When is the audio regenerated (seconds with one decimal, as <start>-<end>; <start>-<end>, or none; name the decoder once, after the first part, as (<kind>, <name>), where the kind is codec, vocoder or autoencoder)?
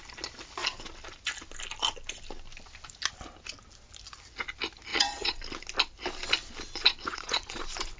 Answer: 4.9-5.4 (vocoder, Vocos); 7.1-7.6